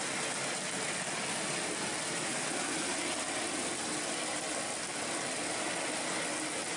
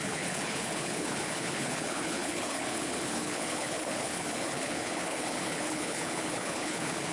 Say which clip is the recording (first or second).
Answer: first